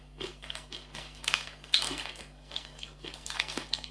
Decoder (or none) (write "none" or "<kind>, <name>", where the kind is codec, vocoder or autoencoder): codec, SNAC